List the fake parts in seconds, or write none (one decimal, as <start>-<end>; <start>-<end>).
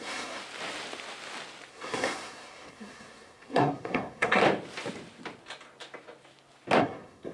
0.0-0.4; 1.7-4.4; 6.8-7.3